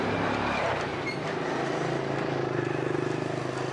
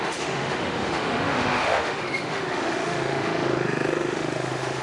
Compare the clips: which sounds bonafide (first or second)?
first